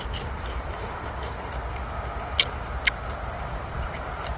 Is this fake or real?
real